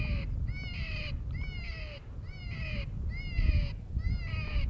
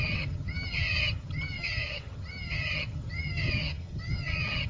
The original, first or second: first